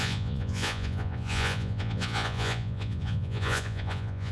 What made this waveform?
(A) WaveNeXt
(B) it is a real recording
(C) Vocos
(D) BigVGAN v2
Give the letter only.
C